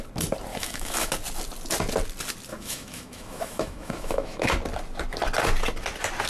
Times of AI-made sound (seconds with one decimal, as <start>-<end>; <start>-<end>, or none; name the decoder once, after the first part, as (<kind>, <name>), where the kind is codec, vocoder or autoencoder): 0.5-1.1 (autoencoder, DAC-VAE); 2.5-4.5